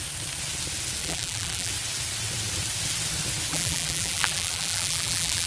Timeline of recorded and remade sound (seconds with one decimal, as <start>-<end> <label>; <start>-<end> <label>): 0.0-1.0 recorded; 1.0-1.7 remade; 1.7-3.5 recorded; 3.5-5.5 remade